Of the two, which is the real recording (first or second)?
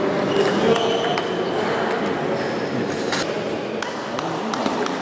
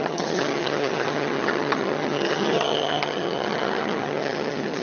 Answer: first